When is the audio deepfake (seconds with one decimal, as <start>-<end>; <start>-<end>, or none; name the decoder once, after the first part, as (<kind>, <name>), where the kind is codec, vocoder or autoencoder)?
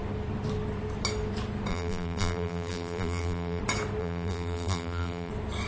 1.7-3.6 (vocoder, BigVGAN v2); 4.0-5.3